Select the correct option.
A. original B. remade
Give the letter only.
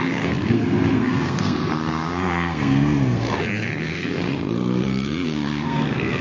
B